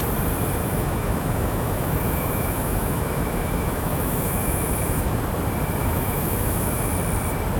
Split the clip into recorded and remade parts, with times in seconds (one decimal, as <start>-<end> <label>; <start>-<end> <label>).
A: 0.0-0.6 recorded; 0.6-5.2 remade; 5.2-5.8 recorded; 5.8-6.9 remade; 6.9-7.6 recorded

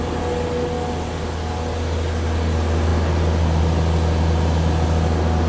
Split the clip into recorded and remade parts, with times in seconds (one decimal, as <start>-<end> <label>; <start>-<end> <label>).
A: 0.0-5.5 recorded

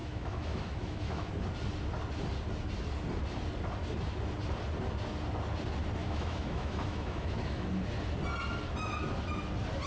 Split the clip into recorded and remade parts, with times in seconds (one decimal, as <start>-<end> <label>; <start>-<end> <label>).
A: 0.0-1.3 remade; 1.3-6.0 recorded; 6.0-7.7 remade; 7.7-9.9 recorded

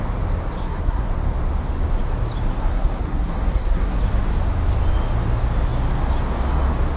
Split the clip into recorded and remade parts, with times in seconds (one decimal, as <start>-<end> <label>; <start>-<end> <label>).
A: 0.0-0.6 recorded; 0.6-1.1 remade; 1.1-2.5 recorded; 2.5-4.0 remade; 4.0-7.0 recorded

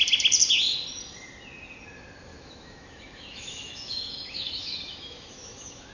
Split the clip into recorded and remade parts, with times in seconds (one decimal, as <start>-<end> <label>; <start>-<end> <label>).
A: 0.0-2.3 recorded; 2.3-5.9 remade

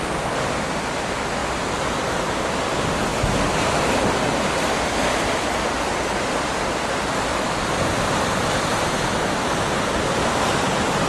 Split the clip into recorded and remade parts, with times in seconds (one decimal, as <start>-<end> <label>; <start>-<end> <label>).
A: 0.0-1.4 remade; 1.4-2.1 recorded; 2.1-11.1 remade